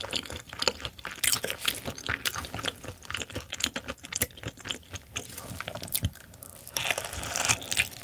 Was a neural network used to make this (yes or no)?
no